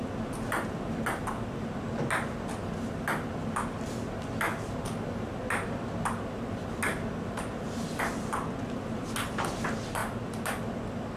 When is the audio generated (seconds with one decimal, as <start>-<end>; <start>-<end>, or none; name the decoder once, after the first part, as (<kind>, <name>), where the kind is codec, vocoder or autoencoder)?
none